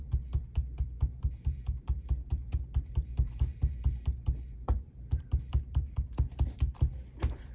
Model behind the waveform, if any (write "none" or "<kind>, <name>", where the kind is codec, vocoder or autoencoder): vocoder, BigVGAN v2